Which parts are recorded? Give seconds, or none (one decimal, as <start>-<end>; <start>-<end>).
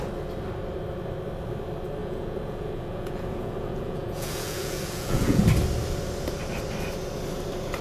0.0-2.0; 5.4-7.8